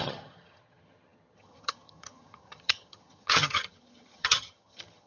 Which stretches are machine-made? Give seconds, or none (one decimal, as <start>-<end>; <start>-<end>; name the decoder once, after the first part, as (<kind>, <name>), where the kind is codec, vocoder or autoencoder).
0.0-5.1 (vocoder, HiFi-GAN)